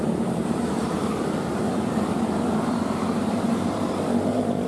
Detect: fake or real fake